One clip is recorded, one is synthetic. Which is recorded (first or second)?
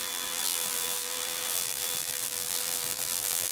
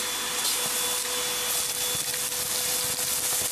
second